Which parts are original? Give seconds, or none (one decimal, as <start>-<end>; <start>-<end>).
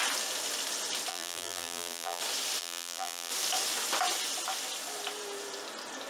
0.0-1.1; 2.2-2.6; 3.3-6.1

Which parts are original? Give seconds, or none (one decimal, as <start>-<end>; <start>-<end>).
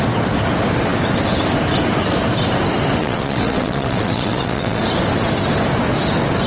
0.0-3.0; 4.8-6.5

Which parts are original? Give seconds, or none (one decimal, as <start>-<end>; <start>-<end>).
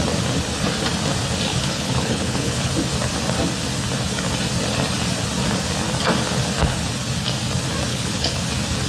0.0-1.5; 2.7-7.9; 8.5-8.9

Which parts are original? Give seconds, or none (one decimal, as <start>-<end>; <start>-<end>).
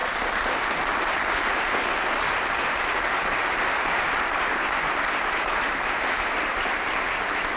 0.0-7.6